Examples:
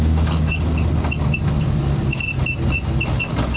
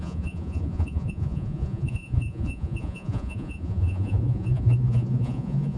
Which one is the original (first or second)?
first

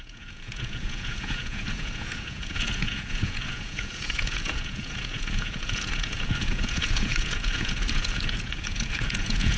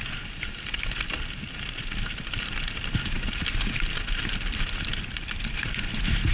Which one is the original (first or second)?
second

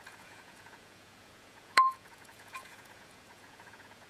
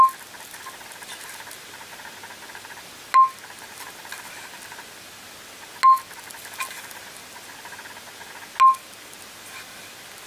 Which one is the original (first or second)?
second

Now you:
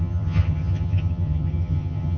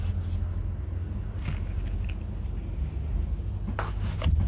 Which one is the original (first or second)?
second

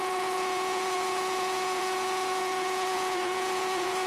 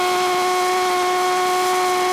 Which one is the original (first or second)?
second